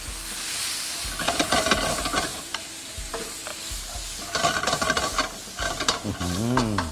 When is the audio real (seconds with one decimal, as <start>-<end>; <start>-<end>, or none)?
0.0-2.3; 3.1-6.9